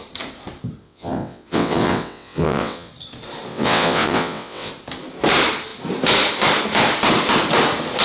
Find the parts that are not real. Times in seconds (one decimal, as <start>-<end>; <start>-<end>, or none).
0.8-2.9; 3.5-4.7